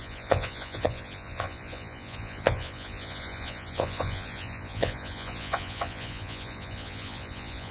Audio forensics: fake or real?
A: fake